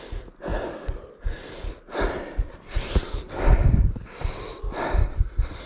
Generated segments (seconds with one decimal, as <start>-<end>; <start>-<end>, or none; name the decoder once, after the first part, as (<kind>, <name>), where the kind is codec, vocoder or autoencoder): 4.5-5.7 (vocoder, BigVGAN v2)